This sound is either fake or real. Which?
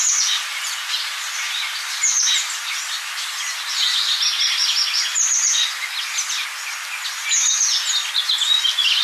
real